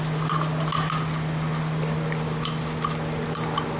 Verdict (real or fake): real